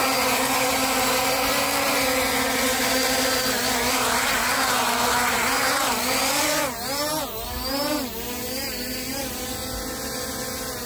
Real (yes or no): yes